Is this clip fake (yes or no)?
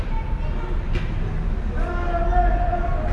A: no